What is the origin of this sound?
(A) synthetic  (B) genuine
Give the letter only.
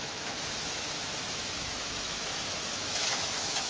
A